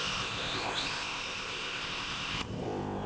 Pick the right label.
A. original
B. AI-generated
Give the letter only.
B